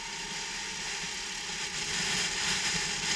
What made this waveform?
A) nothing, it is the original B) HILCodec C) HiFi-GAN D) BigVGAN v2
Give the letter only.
A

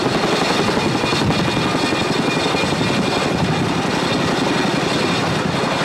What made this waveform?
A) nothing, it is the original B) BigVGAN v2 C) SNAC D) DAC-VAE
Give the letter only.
A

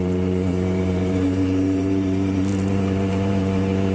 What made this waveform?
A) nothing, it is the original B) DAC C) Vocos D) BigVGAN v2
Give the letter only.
D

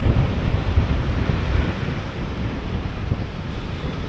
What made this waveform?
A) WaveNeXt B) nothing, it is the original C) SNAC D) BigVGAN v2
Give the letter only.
D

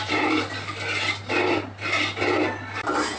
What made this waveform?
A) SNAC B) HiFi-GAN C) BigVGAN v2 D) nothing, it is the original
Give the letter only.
C